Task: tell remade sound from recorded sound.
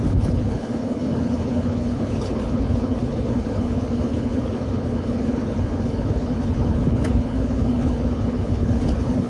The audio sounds remade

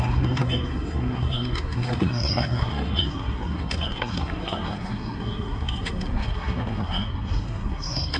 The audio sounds remade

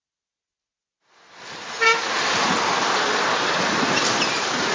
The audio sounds recorded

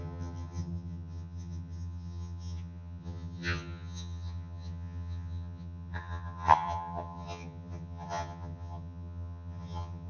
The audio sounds remade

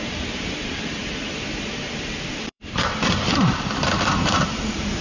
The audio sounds remade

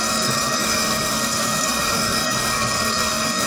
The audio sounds remade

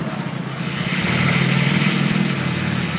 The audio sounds recorded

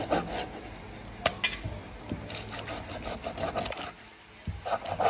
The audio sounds recorded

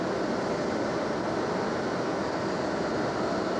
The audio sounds recorded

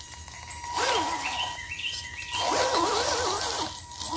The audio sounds recorded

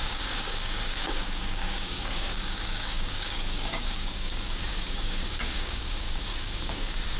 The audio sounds remade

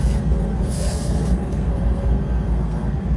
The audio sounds remade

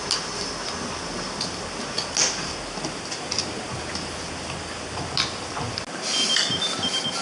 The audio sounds recorded